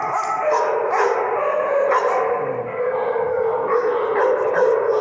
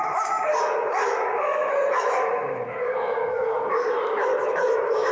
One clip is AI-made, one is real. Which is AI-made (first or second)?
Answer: second